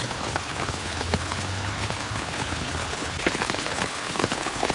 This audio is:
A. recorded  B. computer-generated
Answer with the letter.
B